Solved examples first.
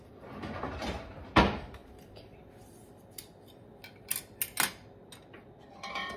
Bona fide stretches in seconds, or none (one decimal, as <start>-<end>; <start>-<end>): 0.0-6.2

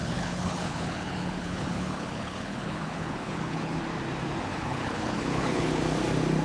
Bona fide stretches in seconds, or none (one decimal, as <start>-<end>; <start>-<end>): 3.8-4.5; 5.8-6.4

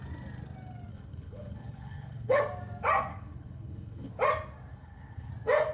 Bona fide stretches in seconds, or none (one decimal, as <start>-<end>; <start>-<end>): 0.0-0.9; 2.4-3.1; 4.1-4.7; 5.3-5.7

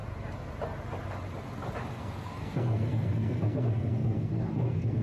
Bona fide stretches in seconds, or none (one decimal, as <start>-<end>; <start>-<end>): 0.0-1.9